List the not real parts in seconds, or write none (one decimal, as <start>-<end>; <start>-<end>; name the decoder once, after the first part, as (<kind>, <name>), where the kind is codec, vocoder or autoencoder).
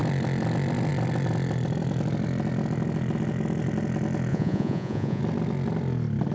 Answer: 4.3-5.2 (vocoder, Vocos)